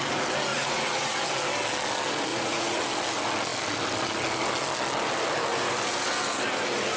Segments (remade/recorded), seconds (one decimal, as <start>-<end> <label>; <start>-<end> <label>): 0.0-0.5 recorded; 0.5-1.2 remade; 1.2-2.3 recorded; 2.3-2.8 remade; 2.8-7.0 recorded